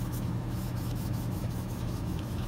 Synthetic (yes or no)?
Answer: yes